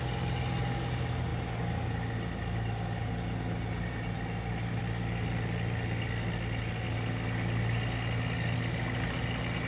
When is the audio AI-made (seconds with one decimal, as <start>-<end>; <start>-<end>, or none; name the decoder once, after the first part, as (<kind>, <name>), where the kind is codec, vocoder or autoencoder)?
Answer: none